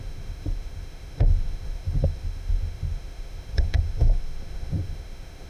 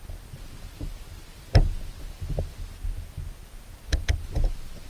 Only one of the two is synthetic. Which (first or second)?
first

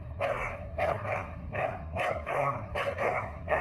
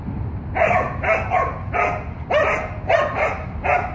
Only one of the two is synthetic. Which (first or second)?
first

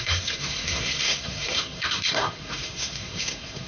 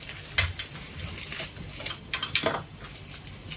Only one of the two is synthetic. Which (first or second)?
first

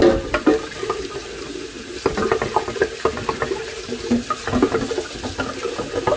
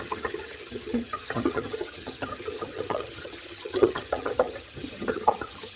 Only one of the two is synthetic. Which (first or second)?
second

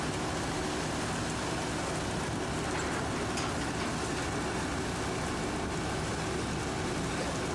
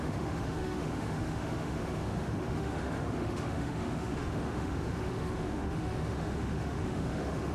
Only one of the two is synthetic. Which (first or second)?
second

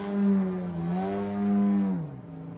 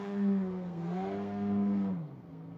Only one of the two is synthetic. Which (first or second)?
second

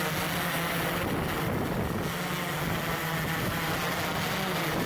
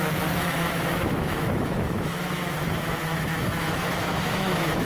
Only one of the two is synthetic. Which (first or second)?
second